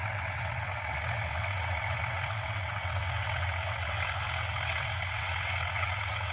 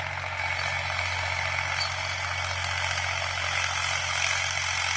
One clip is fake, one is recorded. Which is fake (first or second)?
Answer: first